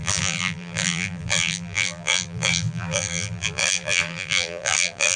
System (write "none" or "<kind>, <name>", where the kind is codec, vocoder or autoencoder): vocoder, BigVGAN v2